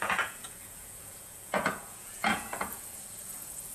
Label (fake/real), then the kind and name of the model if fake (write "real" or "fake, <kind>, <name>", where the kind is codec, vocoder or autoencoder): fake, vocoder, Vocos